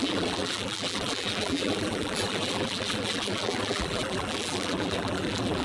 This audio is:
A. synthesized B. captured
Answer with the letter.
A